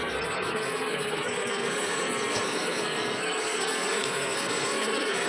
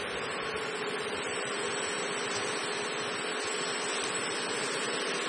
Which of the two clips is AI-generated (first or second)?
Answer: first